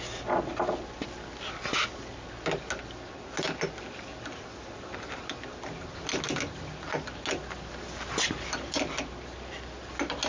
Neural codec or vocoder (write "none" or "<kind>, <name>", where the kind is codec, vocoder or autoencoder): none